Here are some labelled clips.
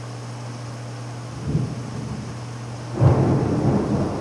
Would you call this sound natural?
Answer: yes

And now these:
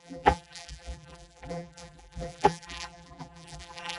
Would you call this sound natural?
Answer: no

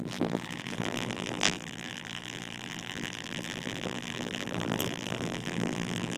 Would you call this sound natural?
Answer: no